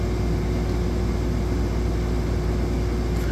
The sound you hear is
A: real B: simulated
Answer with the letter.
A